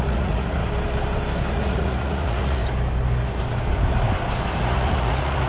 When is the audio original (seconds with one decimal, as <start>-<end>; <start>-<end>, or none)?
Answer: 0.6-1.5; 2.6-4.6